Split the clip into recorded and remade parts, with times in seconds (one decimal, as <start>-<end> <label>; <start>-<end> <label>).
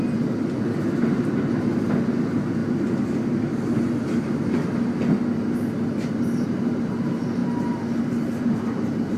0.0-9.2 recorded